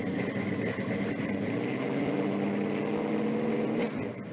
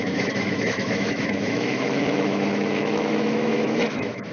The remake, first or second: second